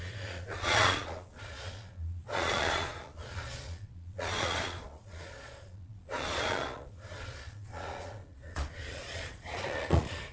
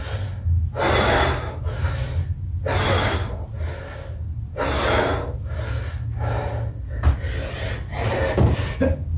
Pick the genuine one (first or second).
second